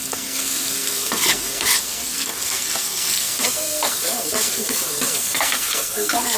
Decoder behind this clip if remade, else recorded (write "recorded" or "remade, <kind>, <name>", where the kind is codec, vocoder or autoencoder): remade, codec, SNAC